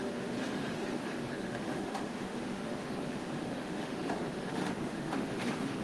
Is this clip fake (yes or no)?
yes